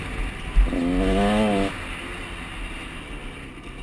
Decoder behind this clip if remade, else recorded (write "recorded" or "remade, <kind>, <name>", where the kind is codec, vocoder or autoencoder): recorded